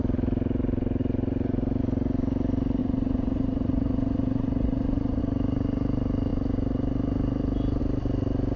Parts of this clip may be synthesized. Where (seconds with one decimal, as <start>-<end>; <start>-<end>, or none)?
2.8-5.2